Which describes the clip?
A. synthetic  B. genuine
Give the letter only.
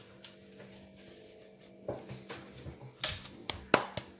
B